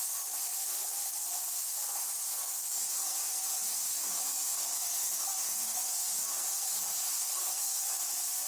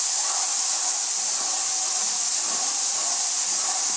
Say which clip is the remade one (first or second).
first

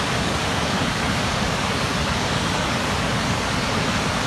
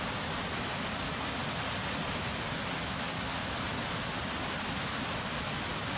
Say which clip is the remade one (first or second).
first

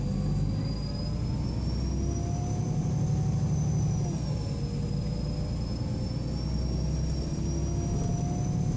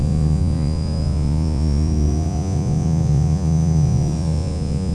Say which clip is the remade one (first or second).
second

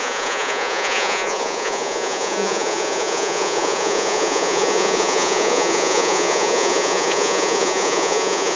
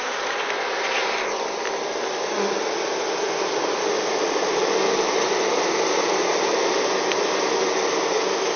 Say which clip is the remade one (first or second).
first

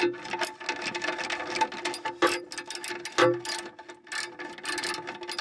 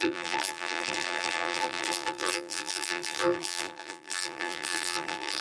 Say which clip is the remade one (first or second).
second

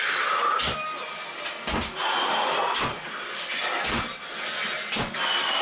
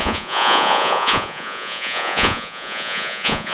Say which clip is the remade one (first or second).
second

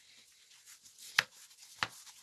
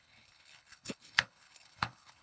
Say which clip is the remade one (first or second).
second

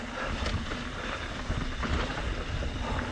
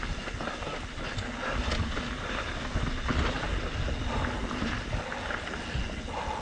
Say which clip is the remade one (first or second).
first